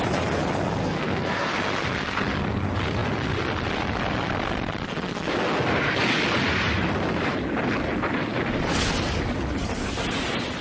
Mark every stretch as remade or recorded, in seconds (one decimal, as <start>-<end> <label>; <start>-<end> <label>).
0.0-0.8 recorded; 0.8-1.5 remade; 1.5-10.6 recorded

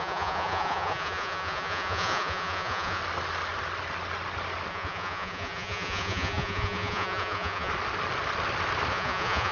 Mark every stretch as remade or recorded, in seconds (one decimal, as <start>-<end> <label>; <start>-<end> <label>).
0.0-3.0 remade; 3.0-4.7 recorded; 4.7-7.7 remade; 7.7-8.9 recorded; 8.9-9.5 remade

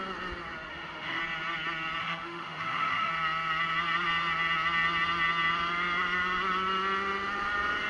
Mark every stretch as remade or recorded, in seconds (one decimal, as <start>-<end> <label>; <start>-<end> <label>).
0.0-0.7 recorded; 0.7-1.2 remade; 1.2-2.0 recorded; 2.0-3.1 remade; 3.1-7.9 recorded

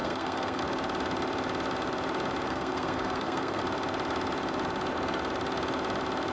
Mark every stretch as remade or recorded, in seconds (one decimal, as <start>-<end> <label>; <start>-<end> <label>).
0.0-0.6 remade; 0.6-2.5 recorded; 2.5-3.6 remade; 3.6-6.3 recorded